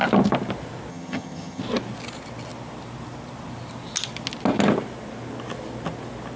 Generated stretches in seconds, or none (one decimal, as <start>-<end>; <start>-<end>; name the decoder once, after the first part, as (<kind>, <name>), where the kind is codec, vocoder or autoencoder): 0.9-1.6 (vocoder, HiFi-GAN)